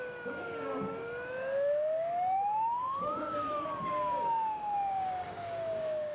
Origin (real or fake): fake